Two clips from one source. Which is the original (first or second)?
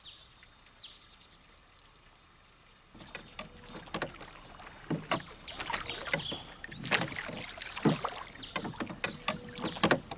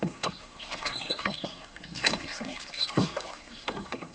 first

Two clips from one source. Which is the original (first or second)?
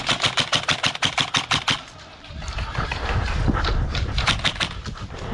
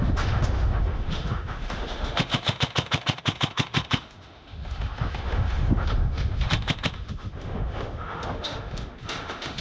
first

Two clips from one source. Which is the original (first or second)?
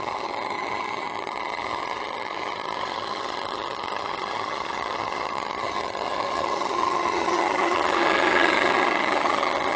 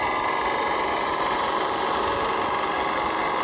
second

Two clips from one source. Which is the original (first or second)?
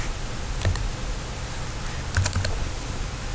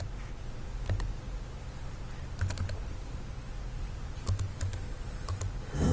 second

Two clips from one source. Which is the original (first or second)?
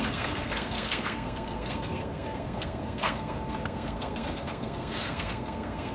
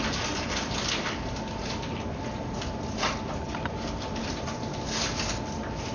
second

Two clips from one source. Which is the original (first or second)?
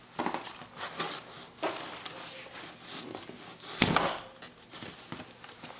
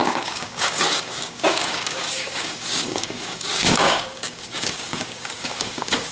first